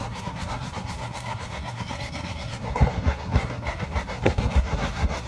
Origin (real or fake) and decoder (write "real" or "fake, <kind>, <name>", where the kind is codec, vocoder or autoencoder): fake, codec, SNAC